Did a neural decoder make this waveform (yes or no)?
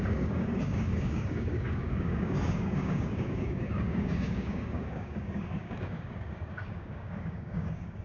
yes